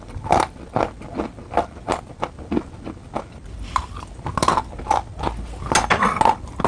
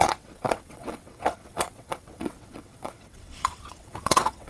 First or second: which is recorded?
first